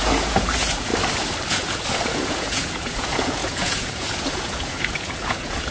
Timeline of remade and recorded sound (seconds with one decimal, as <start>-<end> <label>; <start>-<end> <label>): 0.0-0.9 remade; 0.9-1.5 recorded; 1.5-5.7 remade